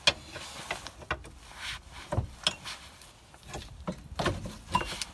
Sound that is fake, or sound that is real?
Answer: real